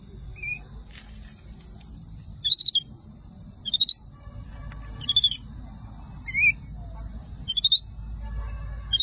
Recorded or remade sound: recorded